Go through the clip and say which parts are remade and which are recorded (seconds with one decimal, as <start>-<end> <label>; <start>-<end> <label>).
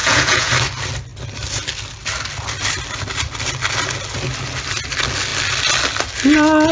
0.0-0.5 remade; 0.5-6.7 recorded